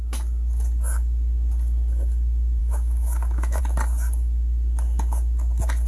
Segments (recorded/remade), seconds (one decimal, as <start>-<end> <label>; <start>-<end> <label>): 0.0-2.6 recorded; 2.6-3.6 remade; 3.6-5.9 recorded